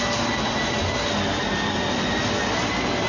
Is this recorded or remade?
recorded